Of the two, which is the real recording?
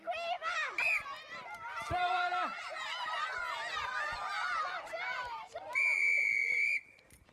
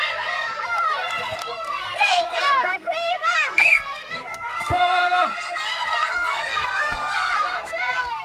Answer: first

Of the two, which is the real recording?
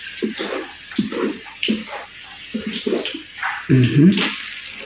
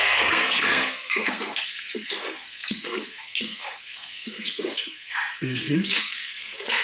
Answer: first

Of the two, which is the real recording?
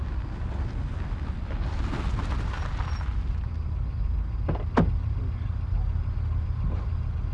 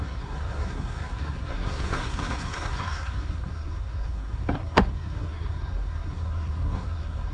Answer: first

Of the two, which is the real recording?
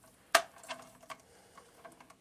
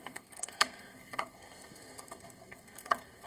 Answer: first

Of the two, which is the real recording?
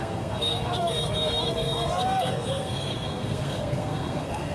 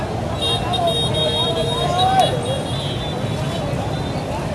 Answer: second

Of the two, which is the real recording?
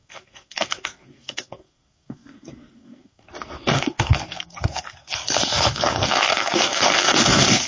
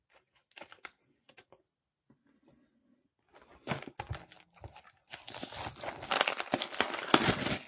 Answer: second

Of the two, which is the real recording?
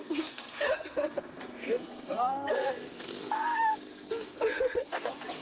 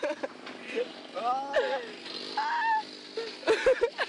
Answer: second